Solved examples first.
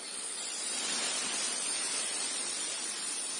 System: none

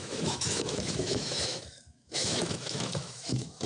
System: autoencoder, DAC-VAE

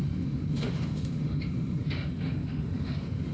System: autoencoder, DAC-VAE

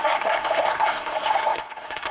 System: codec, SNAC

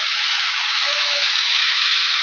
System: autoencoder, DAC-VAE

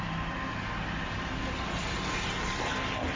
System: none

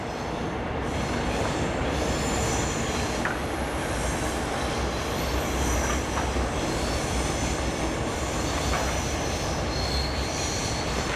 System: none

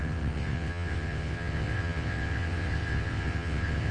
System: vocoder, WaveNeXt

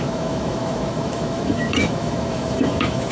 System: autoencoder, DAC-VAE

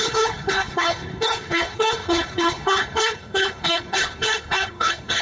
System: codec, HILCodec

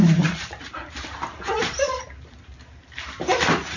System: vocoder, BigVGAN v2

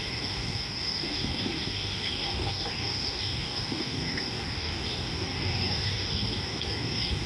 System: codec, DAC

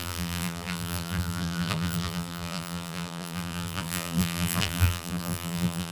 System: vocoder, BigVGAN v2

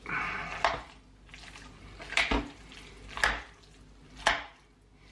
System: none